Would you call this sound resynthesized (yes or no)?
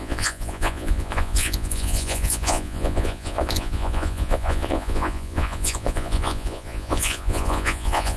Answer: yes